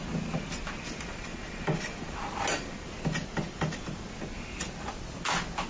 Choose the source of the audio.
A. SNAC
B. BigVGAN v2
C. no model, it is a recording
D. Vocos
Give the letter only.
C